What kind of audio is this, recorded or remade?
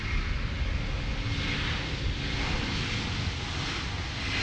recorded